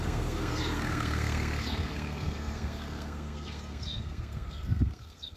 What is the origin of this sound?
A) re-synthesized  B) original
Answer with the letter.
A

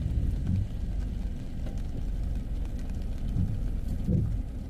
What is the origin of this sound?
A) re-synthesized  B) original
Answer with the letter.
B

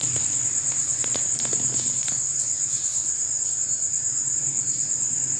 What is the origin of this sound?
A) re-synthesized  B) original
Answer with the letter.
B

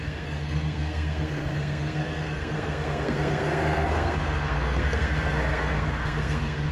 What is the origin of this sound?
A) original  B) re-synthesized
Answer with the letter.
B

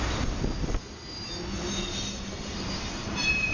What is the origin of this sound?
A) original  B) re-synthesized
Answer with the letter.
A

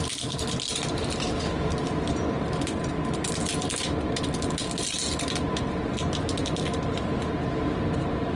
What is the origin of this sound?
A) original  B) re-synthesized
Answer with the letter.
A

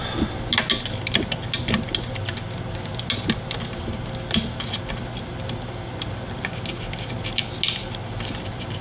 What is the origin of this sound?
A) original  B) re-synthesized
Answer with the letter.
A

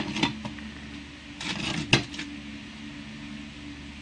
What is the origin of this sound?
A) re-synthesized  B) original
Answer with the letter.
B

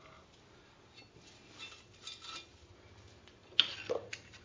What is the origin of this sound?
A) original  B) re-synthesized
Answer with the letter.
A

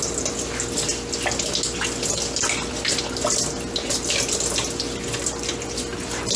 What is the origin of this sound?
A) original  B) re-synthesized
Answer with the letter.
A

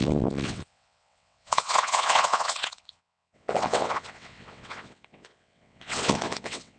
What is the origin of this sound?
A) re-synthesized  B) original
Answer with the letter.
A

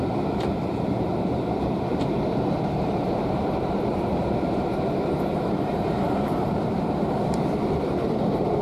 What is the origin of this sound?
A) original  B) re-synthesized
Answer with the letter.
B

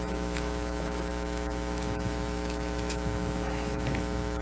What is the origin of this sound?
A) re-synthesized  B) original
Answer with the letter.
A